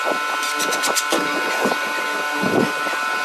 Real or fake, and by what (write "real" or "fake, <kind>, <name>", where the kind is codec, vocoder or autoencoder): real